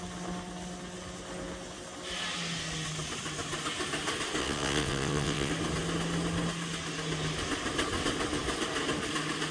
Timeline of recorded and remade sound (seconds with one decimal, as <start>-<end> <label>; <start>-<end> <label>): 0.0-4.4 recorded; 4.4-5.5 remade; 5.5-9.5 recorded